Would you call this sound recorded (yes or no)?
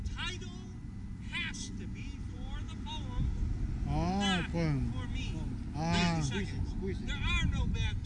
yes